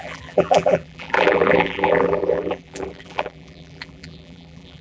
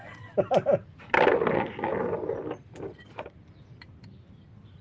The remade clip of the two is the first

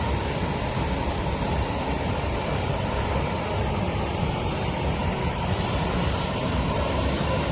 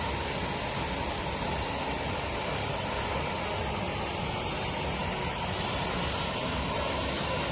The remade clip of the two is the first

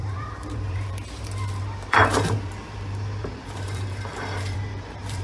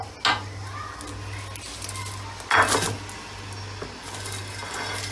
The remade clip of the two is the first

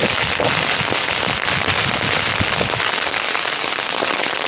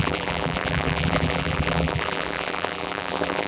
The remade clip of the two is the second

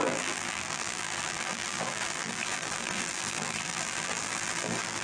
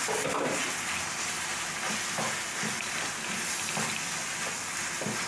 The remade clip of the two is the first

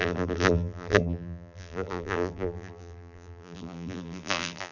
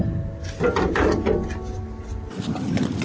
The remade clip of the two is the first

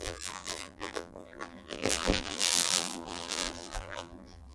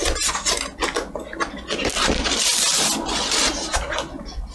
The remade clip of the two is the first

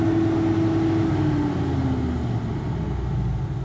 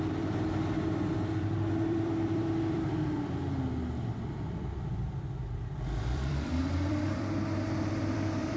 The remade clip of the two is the second